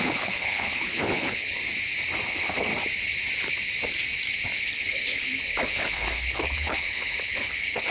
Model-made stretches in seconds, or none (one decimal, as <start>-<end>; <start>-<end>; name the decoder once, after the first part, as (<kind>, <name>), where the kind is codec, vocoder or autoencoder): 0.0-1.6 (codec, HILCodec); 2.3-2.7; 4.6-7.9

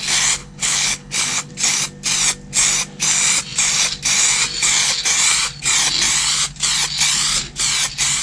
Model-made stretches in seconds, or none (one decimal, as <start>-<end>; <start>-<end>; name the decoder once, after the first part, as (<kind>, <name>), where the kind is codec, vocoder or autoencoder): 0.4-1.5 (codec, HILCodec)

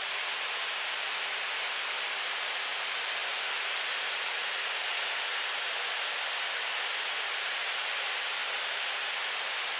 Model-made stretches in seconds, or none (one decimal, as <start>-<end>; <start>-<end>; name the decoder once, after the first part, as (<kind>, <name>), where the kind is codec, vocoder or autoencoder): none

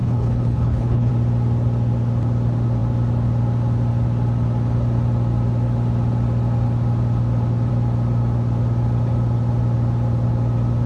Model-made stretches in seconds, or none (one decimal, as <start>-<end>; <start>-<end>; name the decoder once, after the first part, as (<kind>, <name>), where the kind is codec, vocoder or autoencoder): 0.0-1.1 (codec, HILCodec)

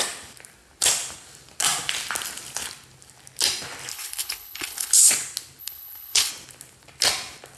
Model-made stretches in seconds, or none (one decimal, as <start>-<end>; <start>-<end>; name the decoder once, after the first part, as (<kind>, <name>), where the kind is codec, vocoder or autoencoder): 3.9-5.1 (codec, HILCodec); 5.6-6.3

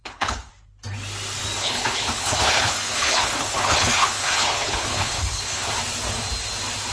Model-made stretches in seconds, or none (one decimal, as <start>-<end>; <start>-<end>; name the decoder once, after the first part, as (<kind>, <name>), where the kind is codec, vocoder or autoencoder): 0.0-0.5 (codec, HILCodec); 1.6-5.7